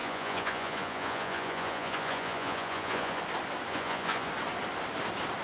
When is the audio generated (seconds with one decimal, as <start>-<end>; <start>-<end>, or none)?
0.0-3.2; 3.7-4.3